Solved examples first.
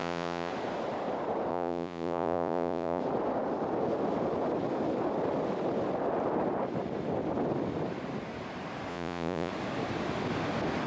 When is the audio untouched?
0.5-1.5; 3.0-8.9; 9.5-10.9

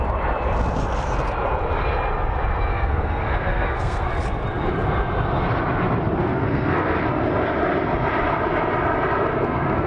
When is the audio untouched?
0.0-2.7; 4.1-6.2; 7.0-9.3

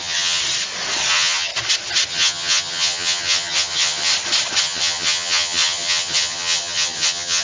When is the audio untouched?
0.4-1.1; 1.5-2.1; 4.1-4.6

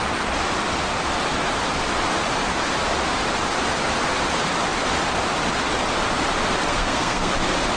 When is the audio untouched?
0.0-6.7; 7.3-7.8

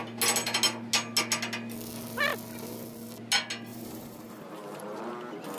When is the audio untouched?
0.0-3.7; 5.1-5.6